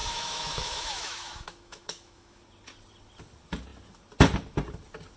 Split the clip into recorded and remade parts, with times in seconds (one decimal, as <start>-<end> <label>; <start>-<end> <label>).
0.0-2.4 remade; 2.4-5.2 recorded

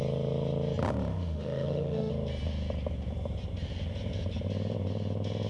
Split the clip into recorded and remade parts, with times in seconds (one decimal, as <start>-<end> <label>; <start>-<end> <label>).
0.0-1.1 recorded; 1.1-2.1 remade; 2.1-5.5 recorded

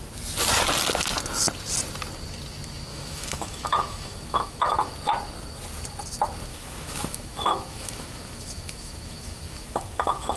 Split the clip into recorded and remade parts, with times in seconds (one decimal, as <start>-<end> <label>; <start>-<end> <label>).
0.0-2.9 recorded; 2.9-4.9 remade; 4.9-6.5 recorded; 6.5-10.4 remade

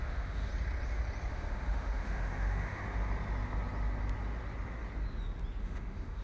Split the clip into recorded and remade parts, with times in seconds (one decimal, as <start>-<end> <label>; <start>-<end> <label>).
0.0-0.5 remade; 0.5-1.3 recorded; 1.3-2.8 remade; 2.8-5.6 recorded; 5.6-6.2 remade

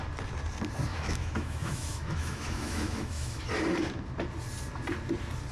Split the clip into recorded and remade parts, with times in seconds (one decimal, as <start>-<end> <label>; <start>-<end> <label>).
0.0-0.9 recorded; 0.9-3.4 remade; 3.4-5.5 recorded

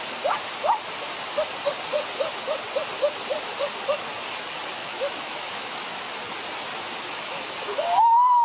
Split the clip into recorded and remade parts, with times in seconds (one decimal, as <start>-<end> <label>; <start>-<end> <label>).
0.0-4.8 recorded; 4.8-6.0 remade; 6.0-6.7 recorded; 6.7-7.5 remade; 7.5-8.4 recorded